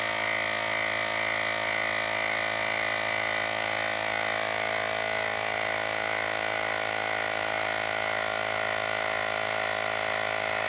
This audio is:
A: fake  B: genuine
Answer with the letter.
B